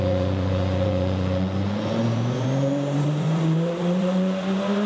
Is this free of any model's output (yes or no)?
no